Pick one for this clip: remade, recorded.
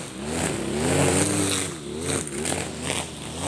recorded